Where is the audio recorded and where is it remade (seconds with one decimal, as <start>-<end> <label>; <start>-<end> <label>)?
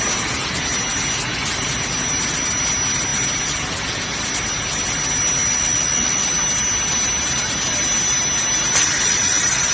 0.0-9.7 recorded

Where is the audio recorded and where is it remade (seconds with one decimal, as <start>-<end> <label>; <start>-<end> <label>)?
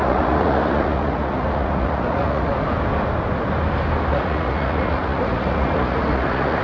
0.0-2.5 remade; 2.5-4.1 recorded; 4.1-6.6 remade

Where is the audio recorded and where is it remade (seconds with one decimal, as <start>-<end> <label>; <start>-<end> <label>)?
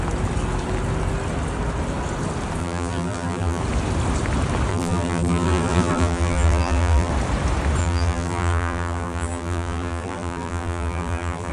0.0-2.6 recorded; 2.6-3.6 remade; 3.6-4.7 recorded; 4.7-7.1 remade; 7.1-7.8 recorded; 7.8-11.5 remade